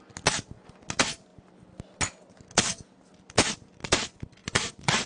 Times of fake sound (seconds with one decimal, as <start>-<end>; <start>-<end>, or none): 4.4-5.1